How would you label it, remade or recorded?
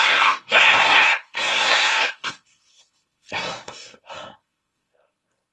remade